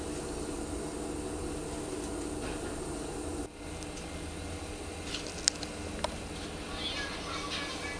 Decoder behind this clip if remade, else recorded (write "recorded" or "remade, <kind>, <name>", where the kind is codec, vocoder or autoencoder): recorded